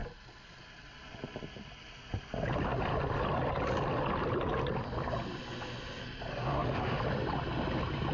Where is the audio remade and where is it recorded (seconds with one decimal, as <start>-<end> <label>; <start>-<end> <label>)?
0.0-6.3 recorded; 6.3-7.0 remade; 7.0-8.1 recorded